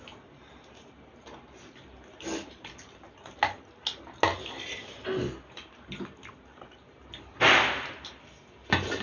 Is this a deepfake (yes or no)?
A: no